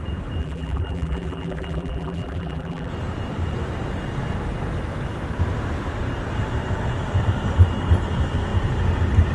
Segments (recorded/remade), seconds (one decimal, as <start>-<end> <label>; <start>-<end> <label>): 0.0-0.4 recorded; 0.4-2.9 remade; 2.9-9.3 recorded